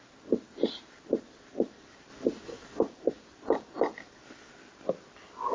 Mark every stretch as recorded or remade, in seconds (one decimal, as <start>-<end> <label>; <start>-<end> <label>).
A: 0.0-2.1 remade; 2.1-2.8 recorded; 2.8-5.5 remade